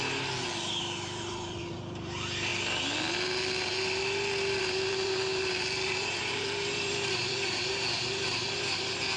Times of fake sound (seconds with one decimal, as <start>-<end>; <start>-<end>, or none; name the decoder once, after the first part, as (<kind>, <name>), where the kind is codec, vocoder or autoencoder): 0.8-2.5 (vocoder, BigVGAN v2); 4.6-9.2